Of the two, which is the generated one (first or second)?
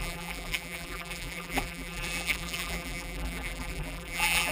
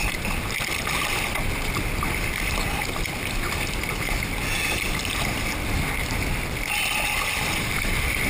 first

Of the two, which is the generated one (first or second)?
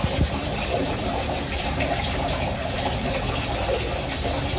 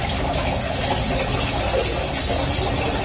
first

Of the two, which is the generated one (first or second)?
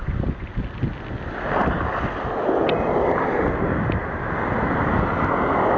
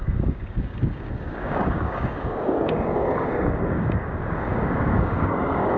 second